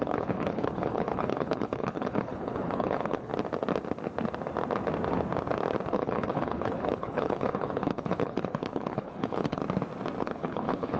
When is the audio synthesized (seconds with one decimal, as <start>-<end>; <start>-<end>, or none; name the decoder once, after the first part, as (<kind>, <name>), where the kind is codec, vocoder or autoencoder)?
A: 0.0-3.3 (codec, HILCodec); 5.9-9.6; 10.2-11.0